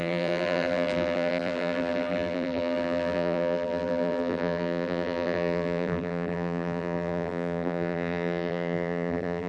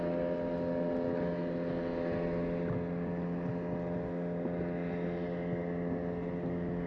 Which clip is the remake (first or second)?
first